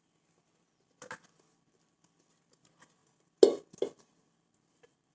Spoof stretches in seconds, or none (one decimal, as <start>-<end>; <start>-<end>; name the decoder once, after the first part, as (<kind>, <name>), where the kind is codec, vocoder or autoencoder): none